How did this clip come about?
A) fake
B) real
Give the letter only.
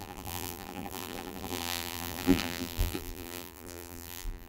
A